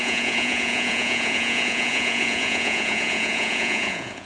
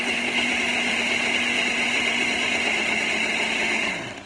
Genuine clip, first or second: second